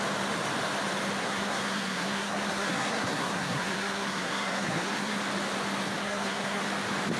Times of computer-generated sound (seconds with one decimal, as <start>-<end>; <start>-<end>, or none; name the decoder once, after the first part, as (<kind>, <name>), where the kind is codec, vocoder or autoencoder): 1.2-5.2 (codec, SNAC); 6.0-6.6